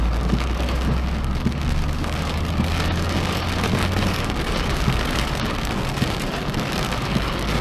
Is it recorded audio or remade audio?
remade